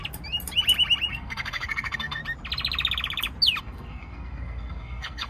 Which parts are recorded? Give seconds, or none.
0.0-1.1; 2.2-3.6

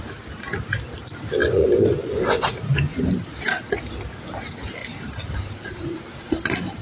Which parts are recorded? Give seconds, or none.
0.0-1.4; 3.1-6.8

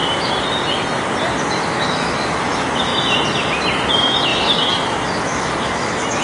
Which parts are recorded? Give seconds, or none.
0.0-1.6; 2.9-3.9

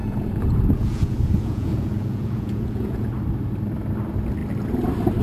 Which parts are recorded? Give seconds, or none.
3.1-5.2

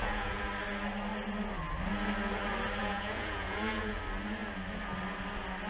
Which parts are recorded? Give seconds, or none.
0.5-2.8; 4.0-5.7